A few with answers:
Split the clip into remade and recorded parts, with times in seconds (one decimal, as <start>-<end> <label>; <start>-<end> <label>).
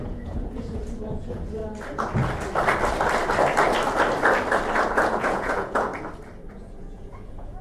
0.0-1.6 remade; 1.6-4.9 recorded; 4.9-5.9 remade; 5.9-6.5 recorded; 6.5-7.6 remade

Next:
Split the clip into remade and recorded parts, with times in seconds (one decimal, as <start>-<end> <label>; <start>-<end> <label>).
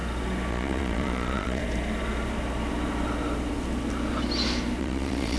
0.0-0.5 recorded; 0.5-1.6 remade; 1.6-4.8 recorded; 4.8-5.4 remade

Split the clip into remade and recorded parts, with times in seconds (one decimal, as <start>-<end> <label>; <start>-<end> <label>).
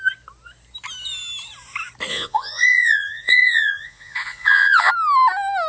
0.0-2.1 recorded; 2.1-4.9 remade; 4.9-5.7 recorded